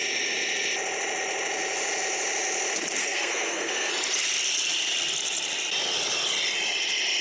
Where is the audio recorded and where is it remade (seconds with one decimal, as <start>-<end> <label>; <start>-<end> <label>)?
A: 0.0-3.0 recorded; 3.0-3.9 remade; 3.9-7.2 recorded